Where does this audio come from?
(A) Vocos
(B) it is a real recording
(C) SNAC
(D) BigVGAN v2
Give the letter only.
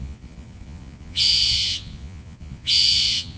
A